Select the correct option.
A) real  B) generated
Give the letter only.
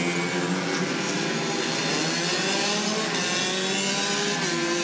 A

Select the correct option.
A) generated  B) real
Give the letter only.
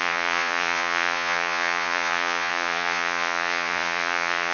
A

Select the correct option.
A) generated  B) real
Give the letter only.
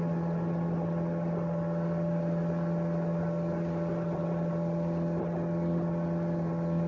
B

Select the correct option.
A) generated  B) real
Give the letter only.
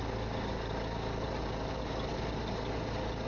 B